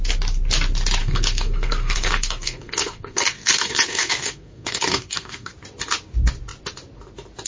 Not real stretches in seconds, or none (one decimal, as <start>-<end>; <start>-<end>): 1.0-5.5